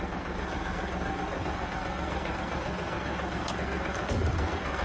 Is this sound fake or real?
fake